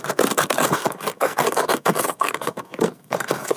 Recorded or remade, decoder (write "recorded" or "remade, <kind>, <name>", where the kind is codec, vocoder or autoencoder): remade, codec, SNAC